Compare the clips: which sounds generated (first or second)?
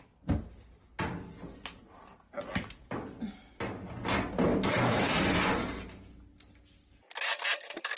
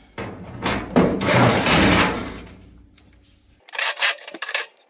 second